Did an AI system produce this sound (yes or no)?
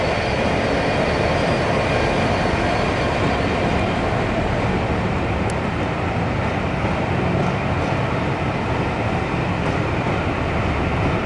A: no